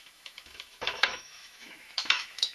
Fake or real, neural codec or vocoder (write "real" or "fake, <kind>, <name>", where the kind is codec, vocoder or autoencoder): fake, autoencoder, DAC-VAE